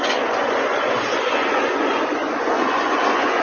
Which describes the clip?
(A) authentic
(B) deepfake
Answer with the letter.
B